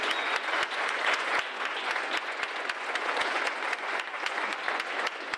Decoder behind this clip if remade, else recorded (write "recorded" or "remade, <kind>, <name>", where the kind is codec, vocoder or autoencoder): remade, vocoder, Vocos